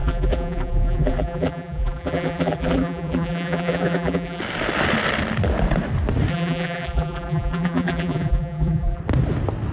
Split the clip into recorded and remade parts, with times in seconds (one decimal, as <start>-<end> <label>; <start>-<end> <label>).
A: 0.0-4.4 remade; 4.4-6.3 recorded; 6.3-9.0 remade; 9.0-9.7 recorded